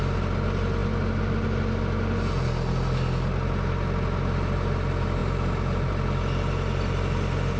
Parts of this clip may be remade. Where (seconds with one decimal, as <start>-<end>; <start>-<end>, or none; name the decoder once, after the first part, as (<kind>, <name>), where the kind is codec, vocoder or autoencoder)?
none